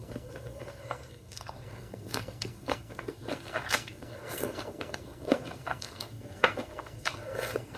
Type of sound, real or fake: fake